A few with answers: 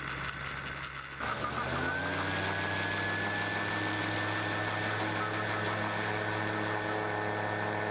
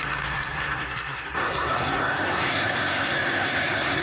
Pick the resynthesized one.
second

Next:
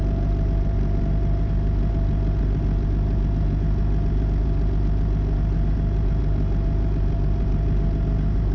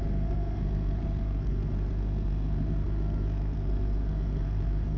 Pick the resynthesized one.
second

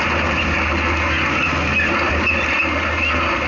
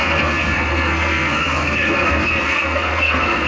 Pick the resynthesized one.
second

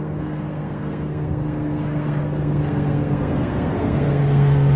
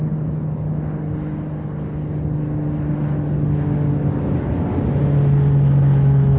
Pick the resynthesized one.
first